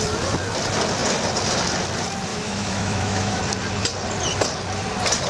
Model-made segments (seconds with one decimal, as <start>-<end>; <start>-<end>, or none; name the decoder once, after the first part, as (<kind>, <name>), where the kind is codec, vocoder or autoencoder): 2.3-3.4 (autoencoder, DAC-VAE)